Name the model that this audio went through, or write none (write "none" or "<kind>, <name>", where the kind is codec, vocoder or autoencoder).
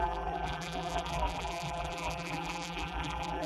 vocoder, BigVGAN v2